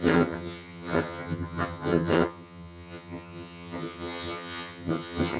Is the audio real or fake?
fake